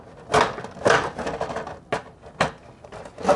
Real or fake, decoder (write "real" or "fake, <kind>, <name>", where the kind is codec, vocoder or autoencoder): real